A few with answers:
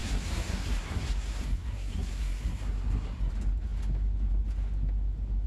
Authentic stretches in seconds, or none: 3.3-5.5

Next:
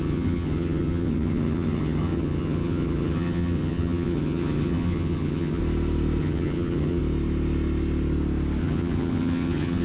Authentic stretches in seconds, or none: 5.6-6.2; 7.0-8.6

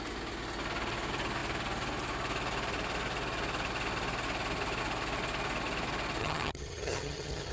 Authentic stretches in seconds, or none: 0.0-6.2

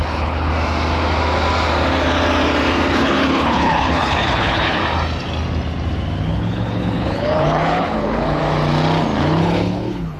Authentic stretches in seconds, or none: 0.5-2.9; 4.8-6.2; 8.4-9.2

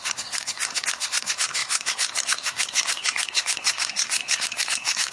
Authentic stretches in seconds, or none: none

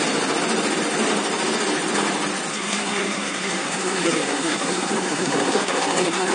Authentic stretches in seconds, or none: 0.0-2.5

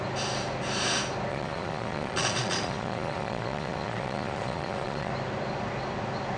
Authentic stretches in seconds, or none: 0.0-1.3; 5.1-6.4